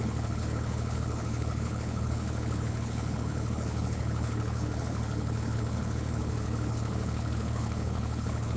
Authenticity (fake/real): fake